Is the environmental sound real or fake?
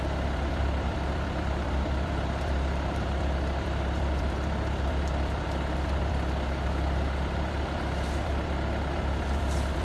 fake